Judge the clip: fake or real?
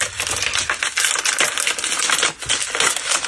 real